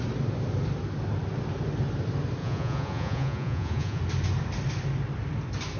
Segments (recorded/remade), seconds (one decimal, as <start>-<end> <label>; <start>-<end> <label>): 0.0-2.4 recorded; 2.4-4.0 remade; 4.0-5.8 recorded